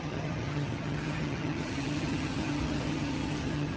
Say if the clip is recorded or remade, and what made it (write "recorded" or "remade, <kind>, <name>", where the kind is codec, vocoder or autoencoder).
remade, vocoder, HiFi-GAN